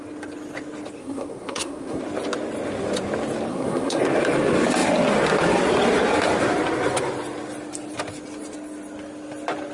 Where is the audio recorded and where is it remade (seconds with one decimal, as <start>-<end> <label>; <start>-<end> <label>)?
0.0-1.0 recorded; 1.0-2.0 remade; 2.0-3.5 recorded; 3.5-4.0 remade; 4.0-9.7 recorded